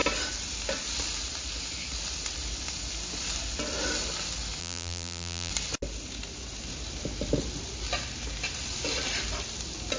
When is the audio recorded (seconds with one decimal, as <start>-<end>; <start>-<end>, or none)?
0.0-4.6; 5.5-10.0